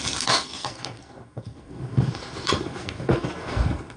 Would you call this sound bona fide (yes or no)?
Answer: no